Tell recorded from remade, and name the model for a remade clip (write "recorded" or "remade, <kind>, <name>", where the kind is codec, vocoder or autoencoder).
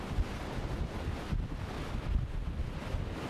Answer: recorded